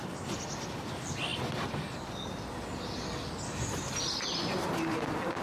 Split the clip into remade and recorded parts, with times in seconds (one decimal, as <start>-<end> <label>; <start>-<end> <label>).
0.0-5.4 recorded